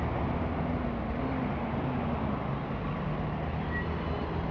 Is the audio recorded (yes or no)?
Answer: yes